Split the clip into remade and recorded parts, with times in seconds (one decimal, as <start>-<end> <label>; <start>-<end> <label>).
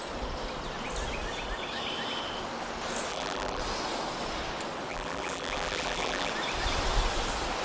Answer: 0.0-3.1 recorded; 3.1-3.6 remade; 3.6-4.9 recorded; 4.9-6.3 remade; 6.3-7.6 recorded